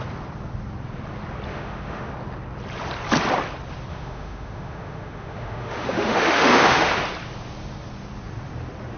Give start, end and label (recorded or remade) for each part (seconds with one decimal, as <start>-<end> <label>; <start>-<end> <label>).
0.0-1.5 recorded; 1.5-2.1 remade; 2.1-3.9 recorded; 3.9-6.9 remade; 6.9-9.0 recorded